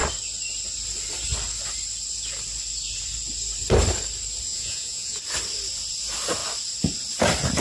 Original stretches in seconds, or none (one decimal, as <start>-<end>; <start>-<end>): 0.0-4.5; 5.2-7.6

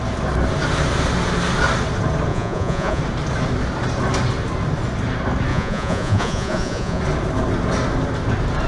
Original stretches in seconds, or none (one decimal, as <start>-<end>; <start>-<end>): 0.0-2.3; 3.0-5.5; 7.0-8.7

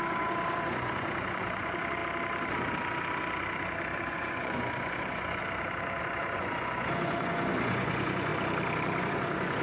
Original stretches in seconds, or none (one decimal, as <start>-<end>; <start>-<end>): 2.0-4.1; 5.4-6.0; 8.3-9.0

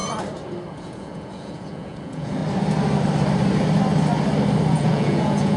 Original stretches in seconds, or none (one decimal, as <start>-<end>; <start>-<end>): 0.0-0.7; 2.4-4.7

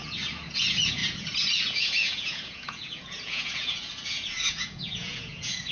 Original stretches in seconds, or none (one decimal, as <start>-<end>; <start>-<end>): none

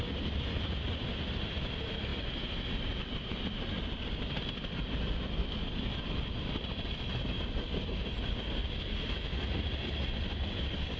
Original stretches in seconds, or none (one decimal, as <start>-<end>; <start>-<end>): 0.0-11.0

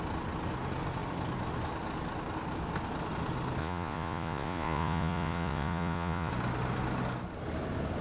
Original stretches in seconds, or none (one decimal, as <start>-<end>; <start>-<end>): 0.0-3.6; 6.3-8.0